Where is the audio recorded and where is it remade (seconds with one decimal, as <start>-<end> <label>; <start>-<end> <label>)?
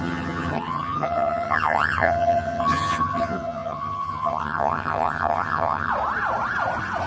0.0-5.9 remade; 5.9-7.1 recorded